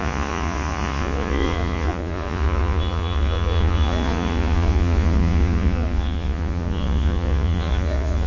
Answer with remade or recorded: remade